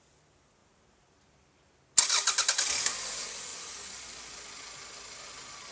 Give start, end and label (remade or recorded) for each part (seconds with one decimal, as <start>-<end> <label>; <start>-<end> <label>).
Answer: 0.0-5.7 recorded